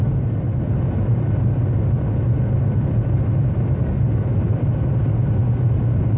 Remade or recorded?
recorded